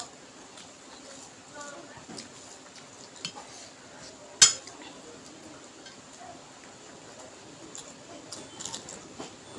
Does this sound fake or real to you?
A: real